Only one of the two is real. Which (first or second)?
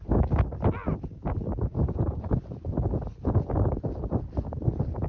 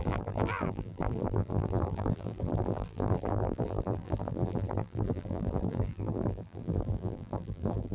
first